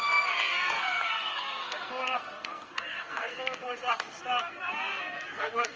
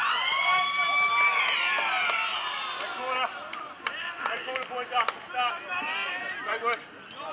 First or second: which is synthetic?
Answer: first